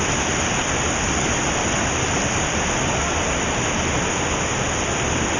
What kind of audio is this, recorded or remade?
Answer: recorded